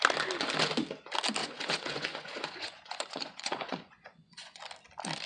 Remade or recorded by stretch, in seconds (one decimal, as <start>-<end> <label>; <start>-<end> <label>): 0.0-1.4 recorded; 1.4-4.6 remade; 4.6-5.3 recorded

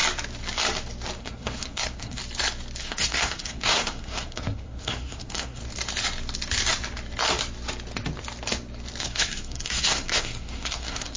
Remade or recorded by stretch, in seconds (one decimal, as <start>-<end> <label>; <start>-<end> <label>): 0.0-1.2 recorded; 1.2-2.2 remade; 2.2-2.8 recorded; 2.8-5.6 remade; 5.6-9.0 recorded; 9.0-11.2 remade

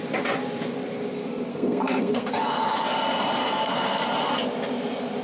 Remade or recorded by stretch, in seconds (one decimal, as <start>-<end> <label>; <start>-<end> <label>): 0.0-1.5 recorded; 1.5-2.3 remade; 2.3-3.4 recorded; 3.4-4.0 remade; 4.0-5.2 recorded

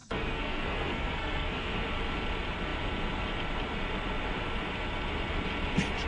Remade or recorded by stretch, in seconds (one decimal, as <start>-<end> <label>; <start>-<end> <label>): 0.0-1.7 remade; 1.7-6.1 recorded

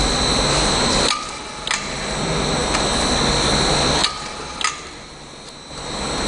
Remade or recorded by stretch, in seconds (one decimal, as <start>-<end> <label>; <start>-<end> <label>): 0.0-6.3 recorded

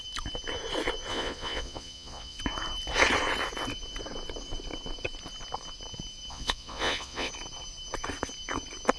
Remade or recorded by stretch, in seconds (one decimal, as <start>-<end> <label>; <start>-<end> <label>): 0.0-1.1 recorded; 1.1-2.4 remade; 2.4-6.3 recorded; 6.3-7.3 remade; 7.3-9.0 recorded

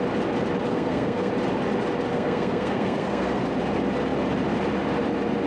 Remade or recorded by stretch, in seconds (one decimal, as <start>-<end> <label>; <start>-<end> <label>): 0.0-0.7 recorded; 0.7-1.3 remade; 1.3-2.1 recorded; 2.1-3.4 remade; 3.4-5.5 recorded

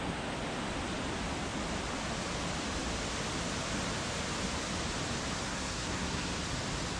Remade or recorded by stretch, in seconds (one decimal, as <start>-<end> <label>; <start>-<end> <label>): 0.0-5.4 recorded; 5.4-6.4 remade; 6.4-7.0 recorded